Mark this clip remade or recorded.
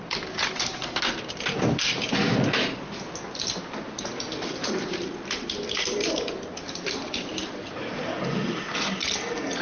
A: recorded